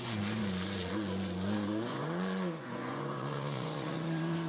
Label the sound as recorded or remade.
remade